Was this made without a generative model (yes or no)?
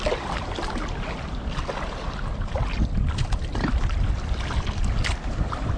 yes